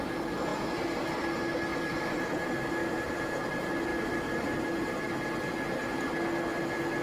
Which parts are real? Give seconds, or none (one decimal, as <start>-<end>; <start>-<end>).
0.0-0.5; 1.1-1.7; 2.4-2.8; 3.3-3.9; 4.6-7.0